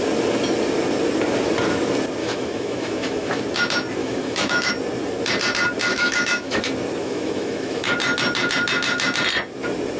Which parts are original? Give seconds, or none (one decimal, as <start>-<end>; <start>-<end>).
0.0-2.2; 3.4-4.0; 4.7-5.9; 6.6-7.0; 7.9-10.0